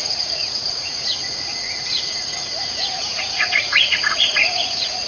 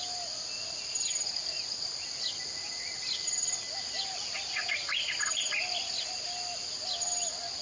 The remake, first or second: first